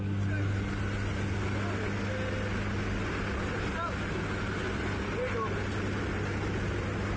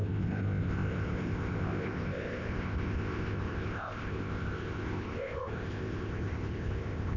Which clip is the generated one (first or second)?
second